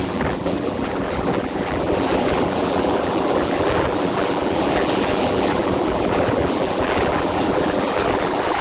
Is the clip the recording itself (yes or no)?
no